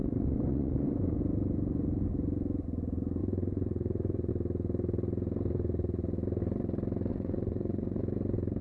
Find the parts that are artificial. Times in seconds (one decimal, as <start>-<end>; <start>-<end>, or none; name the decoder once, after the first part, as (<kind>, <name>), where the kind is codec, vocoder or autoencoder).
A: 0.0-1.2 (vocoder, Vocos); 3.2-4.3; 7.1-8.0